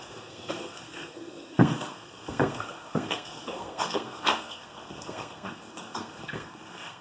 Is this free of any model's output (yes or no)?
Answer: no